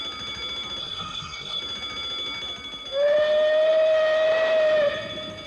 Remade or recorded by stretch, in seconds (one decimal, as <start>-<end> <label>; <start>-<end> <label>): 0.0-0.8 recorded; 0.8-1.6 remade; 1.6-5.5 recorded